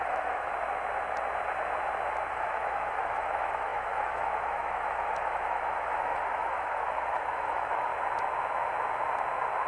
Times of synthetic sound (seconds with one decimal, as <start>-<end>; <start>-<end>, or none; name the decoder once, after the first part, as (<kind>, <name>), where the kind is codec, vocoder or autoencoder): 0.0-0.5 (autoencoder, DAC-VAE); 2.3-7.9